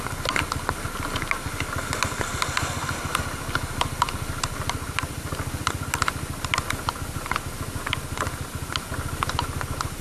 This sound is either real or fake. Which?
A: real